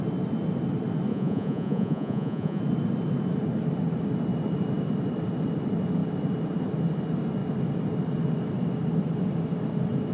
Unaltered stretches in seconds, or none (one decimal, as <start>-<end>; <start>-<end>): 0.0-1.1; 2.6-10.1